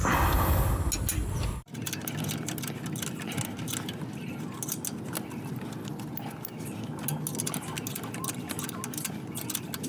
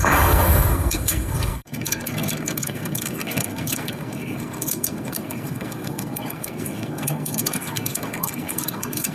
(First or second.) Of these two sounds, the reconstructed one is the second